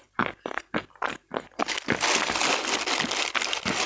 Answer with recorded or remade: recorded